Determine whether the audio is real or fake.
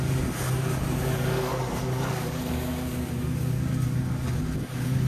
fake